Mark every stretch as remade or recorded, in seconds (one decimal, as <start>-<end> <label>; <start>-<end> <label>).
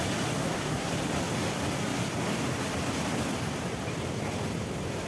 0.0-0.4 recorded; 0.4-0.9 remade; 0.9-5.1 recorded